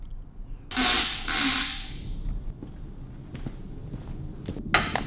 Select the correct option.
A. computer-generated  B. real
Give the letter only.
B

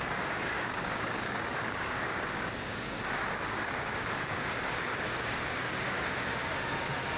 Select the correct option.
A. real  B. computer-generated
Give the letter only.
B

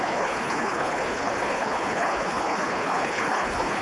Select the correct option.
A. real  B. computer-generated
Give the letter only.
B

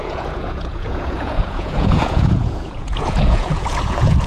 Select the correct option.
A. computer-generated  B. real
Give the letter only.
A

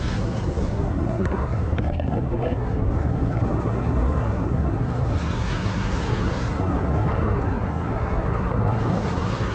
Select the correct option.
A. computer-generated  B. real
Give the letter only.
A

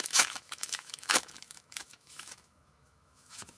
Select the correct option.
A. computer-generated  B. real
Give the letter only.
A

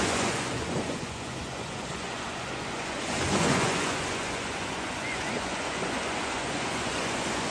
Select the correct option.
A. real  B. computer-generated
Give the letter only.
B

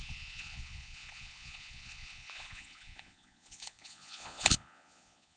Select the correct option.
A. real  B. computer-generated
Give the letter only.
B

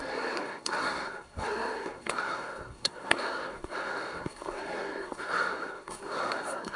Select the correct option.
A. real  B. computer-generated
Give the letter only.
B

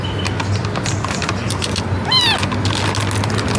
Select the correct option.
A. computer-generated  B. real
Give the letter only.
B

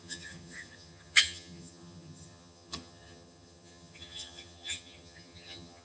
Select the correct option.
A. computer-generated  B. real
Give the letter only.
A